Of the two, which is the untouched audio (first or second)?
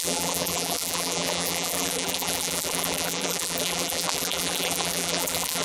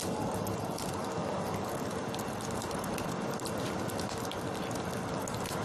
second